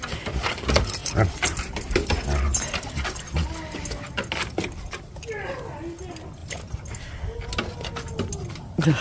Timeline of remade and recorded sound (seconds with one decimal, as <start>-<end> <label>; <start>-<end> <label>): 0.0-9.0 recorded